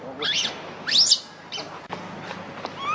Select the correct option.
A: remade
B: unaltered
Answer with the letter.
B